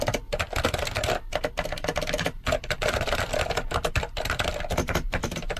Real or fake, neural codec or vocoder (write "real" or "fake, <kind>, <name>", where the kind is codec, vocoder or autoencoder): real